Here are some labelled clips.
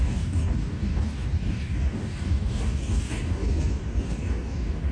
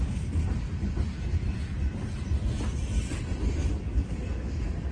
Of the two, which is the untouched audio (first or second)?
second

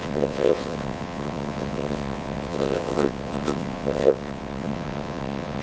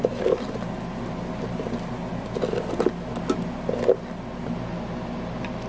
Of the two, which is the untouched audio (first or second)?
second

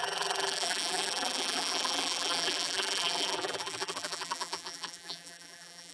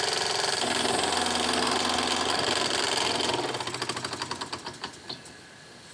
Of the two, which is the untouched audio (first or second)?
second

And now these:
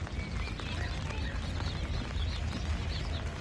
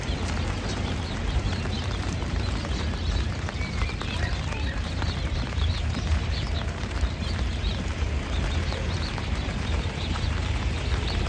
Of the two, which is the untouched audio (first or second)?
first